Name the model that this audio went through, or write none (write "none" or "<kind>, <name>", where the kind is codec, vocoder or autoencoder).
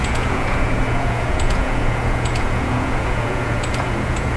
vocoder, Vocos